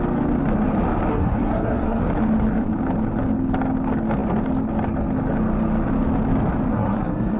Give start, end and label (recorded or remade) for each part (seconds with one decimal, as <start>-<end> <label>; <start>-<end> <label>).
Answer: 0.0-1.1 recorded; 1.1-2.0 remade; 2.0-6.7 recorded; 6.7-7.4 remade